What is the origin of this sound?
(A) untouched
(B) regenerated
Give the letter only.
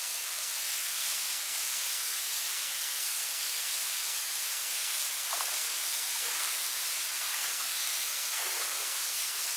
B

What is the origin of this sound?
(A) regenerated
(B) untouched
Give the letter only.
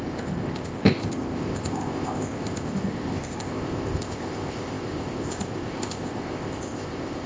A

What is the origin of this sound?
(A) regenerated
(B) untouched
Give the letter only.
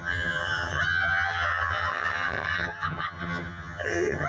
A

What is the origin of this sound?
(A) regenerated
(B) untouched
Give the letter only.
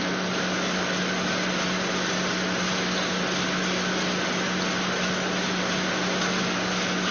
B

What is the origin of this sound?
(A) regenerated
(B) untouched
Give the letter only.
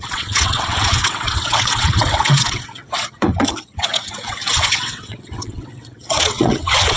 A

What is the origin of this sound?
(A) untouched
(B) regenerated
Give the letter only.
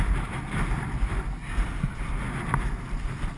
A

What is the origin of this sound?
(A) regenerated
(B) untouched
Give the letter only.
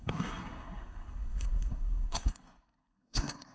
A